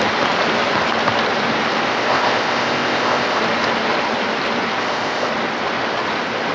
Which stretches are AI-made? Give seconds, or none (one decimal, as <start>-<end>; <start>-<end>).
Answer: 1.9-3.4; 4.8-5.3